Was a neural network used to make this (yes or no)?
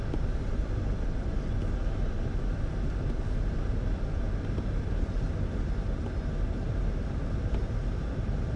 no